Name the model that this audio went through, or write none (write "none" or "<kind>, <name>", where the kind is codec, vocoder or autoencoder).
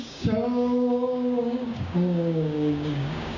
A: codec, DAC